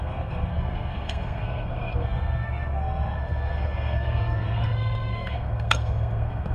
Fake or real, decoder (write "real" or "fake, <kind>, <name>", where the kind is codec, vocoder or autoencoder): fake, codec, SNAC